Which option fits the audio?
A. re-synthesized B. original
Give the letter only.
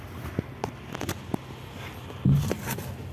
B